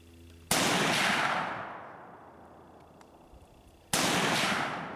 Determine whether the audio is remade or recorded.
recorded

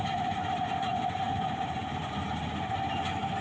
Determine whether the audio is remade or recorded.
remade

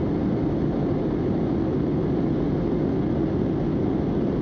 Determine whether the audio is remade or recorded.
recorded